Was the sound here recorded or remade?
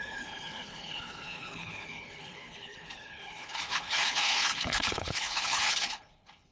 remade